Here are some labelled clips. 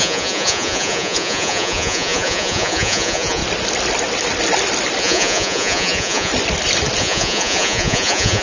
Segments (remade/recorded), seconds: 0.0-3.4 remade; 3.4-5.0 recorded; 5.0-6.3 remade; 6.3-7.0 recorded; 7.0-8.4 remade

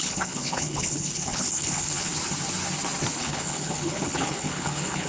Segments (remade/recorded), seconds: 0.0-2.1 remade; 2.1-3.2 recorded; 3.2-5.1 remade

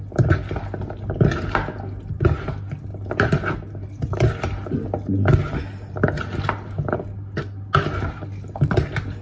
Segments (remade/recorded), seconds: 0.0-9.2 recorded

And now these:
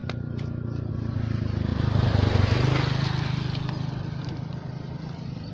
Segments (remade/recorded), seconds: 0.0-5.5 recorded